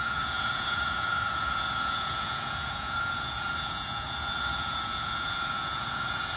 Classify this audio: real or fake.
fake